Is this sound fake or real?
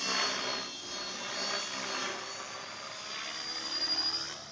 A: real